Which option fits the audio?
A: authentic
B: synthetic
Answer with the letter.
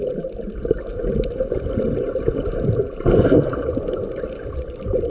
B